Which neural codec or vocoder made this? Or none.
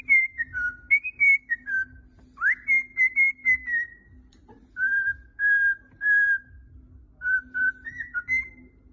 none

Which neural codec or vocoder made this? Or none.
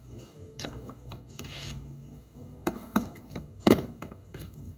codec, DAC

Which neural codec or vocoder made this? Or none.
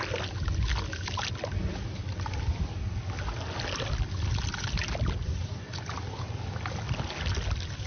none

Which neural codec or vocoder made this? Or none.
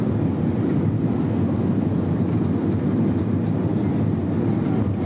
none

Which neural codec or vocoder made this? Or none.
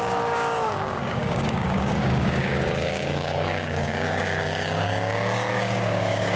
codec, DAC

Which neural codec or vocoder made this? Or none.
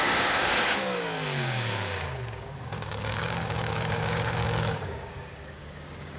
codec, DAC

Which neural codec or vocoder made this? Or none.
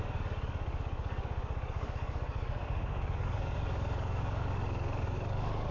codec, DAC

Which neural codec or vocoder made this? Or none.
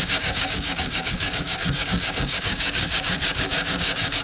codec, DAC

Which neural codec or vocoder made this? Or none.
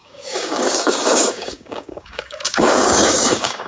codec, DAC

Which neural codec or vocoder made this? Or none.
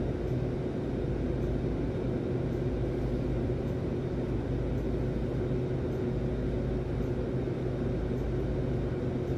none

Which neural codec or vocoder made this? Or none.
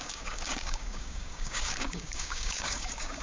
codec, DAC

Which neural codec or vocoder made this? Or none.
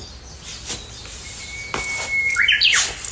none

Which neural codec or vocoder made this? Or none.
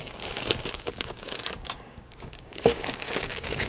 codec, DAC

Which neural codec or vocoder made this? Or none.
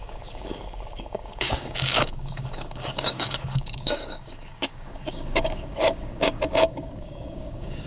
codec, DAC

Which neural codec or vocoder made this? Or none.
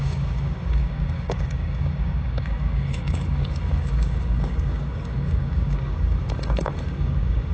codec, DAC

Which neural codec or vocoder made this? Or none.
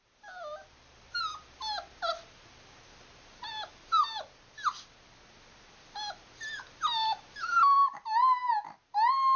none